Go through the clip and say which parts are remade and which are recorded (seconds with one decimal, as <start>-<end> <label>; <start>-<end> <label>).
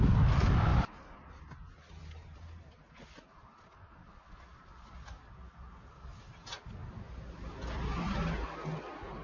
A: 0.0-9.2 recorded